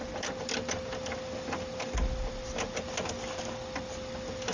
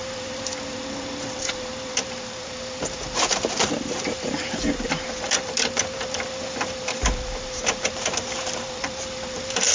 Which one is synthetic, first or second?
second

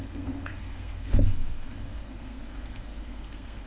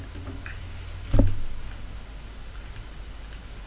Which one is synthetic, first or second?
first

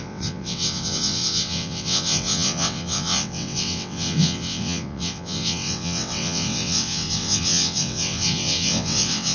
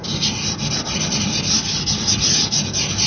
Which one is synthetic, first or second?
first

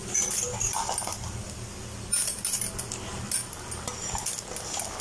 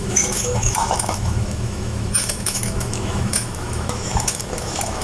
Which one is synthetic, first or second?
second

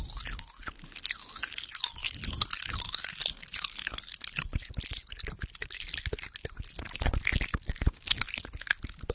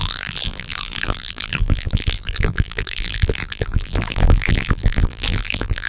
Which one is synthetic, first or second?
second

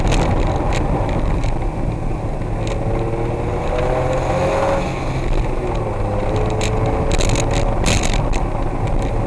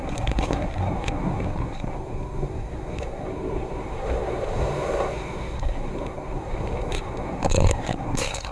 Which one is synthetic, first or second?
second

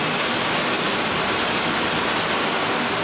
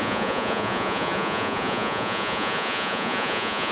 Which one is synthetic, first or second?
second